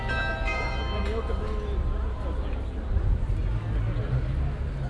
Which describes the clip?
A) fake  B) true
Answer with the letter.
B